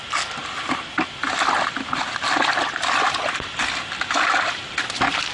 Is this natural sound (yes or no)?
yes